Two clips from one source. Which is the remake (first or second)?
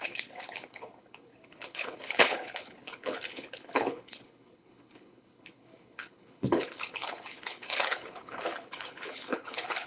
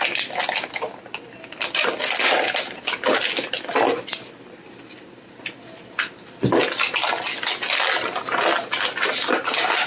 first